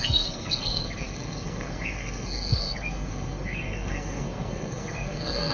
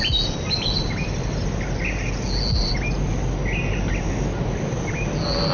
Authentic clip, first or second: second